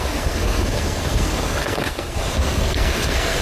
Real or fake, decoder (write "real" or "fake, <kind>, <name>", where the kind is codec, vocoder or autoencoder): fake, codec, SNAC